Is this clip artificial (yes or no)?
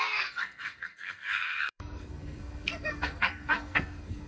yes